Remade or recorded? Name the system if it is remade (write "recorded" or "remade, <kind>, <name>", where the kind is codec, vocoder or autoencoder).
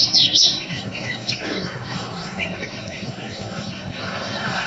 remade, codec, SNAC